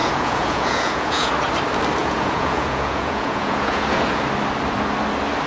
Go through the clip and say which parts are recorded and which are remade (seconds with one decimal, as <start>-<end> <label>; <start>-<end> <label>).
0.0-1.3 remade; 1.3-2.0 recorded; 2.0-4.2 remade; 4.2-5.5 recorded